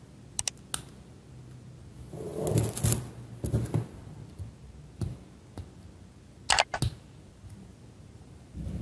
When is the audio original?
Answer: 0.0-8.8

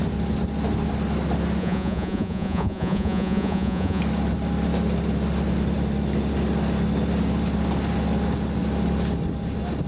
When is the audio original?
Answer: 0.0-1.6; 4.0-9.9

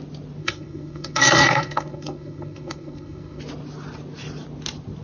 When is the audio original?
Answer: 0.0-0.4; 3.4-5.0

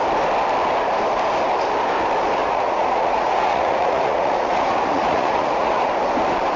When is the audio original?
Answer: 0.0-2.4; 5.9-6.6

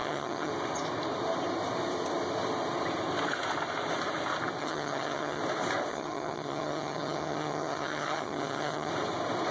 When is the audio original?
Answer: 0.5-4.6; 5.4-5.9; 8.9-9.5

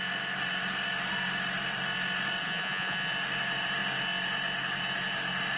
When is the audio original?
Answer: 0.0-2.4; 3.1-5.6

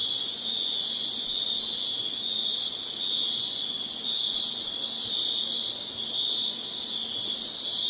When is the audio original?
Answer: 4.7-7.9